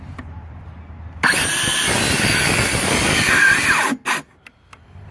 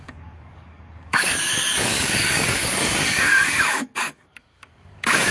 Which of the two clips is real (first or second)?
first